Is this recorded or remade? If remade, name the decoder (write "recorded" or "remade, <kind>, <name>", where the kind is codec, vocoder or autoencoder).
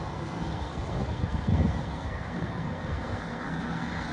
remade, codec, SNAC